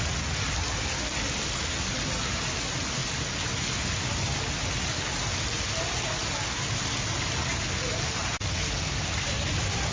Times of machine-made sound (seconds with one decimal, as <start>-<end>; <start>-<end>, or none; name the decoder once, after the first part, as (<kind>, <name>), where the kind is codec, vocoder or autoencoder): none